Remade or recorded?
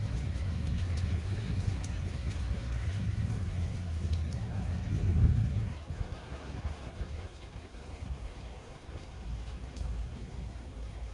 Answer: remade